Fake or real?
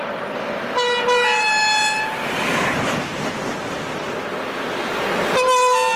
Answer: real